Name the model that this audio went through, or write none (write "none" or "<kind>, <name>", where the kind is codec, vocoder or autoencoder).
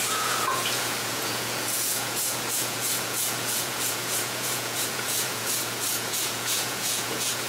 vocoder, Vocos